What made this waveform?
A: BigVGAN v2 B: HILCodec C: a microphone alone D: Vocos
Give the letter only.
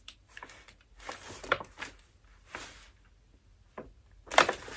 C